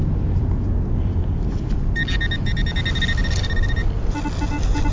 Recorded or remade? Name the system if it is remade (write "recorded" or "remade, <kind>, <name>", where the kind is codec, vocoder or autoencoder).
recorded